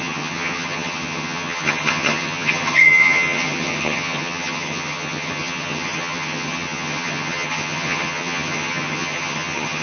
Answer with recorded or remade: remade